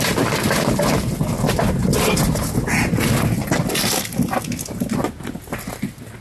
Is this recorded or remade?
recorded